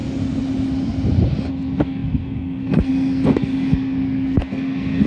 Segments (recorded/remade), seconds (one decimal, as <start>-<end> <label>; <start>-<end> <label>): 0.0-1.5 recorded; 1.5-5.1 remade